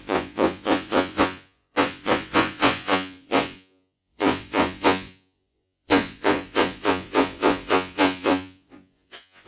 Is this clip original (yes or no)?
no